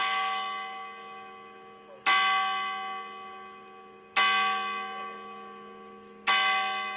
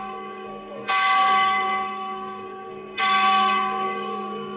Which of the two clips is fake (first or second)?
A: second